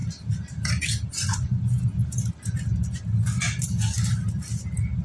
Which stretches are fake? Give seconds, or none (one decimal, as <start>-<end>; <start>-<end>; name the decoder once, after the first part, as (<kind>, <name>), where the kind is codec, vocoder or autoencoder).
1.1-2.0 (vocoder, Vocos)